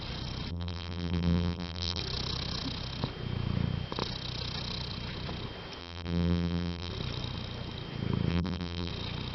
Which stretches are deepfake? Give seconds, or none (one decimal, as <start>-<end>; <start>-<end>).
0.5-2.0; 5.8-6.9; 8.3-8.9